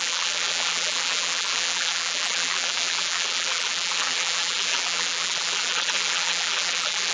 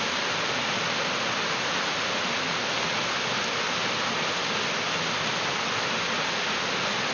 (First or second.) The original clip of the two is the second